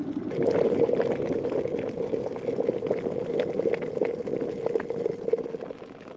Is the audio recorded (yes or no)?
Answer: yes